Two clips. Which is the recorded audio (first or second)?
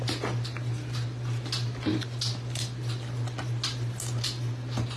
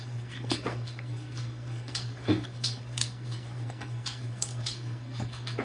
first